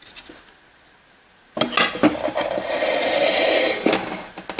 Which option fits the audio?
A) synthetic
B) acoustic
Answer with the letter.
B